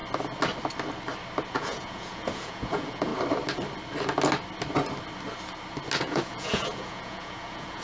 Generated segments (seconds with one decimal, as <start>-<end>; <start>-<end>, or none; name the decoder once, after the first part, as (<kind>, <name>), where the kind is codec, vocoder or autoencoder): 1.5-3.1 (vocoder, Vocos); 6.0-7.8